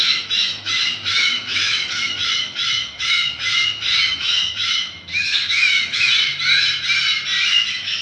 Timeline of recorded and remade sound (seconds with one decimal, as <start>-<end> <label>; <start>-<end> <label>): 0.0-6.3 remade; 6.3-7.5 recorded; 7.5-8.0 remade